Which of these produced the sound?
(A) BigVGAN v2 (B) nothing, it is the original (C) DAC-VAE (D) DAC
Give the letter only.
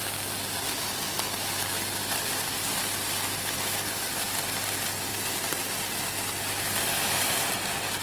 B